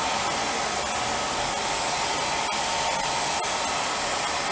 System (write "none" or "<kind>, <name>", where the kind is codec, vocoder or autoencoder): none